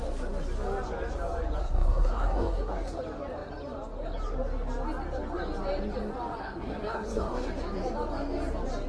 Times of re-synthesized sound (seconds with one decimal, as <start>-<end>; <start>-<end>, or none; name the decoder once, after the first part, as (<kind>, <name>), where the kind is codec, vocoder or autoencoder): 1.6-3.0 (codec, SNAC); 6.4-7.5